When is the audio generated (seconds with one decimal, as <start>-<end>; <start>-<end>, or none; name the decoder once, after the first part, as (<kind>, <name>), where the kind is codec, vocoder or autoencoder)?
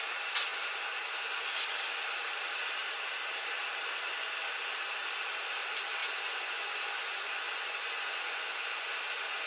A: 6.0-8.9 (vocoder, Vocos)